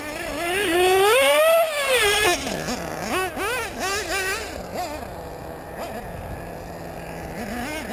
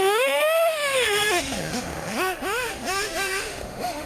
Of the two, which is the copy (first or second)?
second